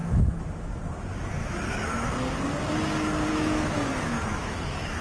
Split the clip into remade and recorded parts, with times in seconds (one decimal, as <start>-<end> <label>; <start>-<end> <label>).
0.0-0.8 remade; 0.8-1.4 recorded; 1.4-2.1 remade; 2.1-3.3 recorded; 3.3-5.0 remade